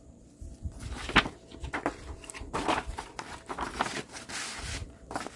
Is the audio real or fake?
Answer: fake